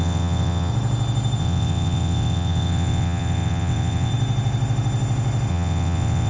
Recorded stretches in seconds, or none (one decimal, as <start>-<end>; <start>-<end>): 0.7-1.4; 4.1-5.5